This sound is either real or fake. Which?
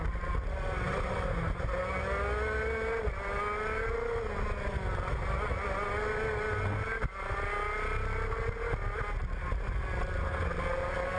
real